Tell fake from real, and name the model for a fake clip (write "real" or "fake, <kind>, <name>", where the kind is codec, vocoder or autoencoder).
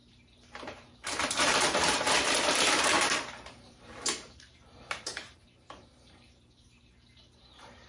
fake, vocoder, BigVGAN v2